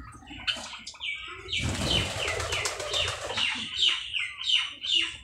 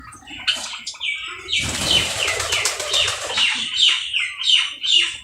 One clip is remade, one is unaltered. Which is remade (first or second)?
second